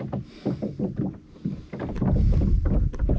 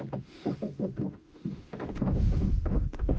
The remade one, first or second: second